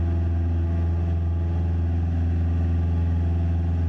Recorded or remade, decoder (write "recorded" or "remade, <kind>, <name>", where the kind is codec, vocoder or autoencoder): recorded